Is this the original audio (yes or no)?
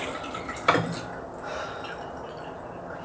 no